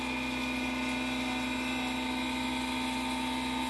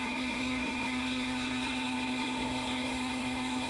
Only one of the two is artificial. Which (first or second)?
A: second